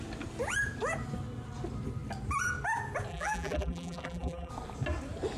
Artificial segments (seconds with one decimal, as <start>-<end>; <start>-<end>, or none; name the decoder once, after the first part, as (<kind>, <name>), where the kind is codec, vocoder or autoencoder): 3.1-4.5 (vocoder, BigVGAN v2)